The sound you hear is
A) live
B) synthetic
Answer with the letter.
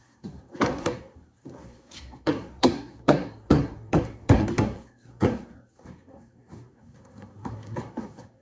B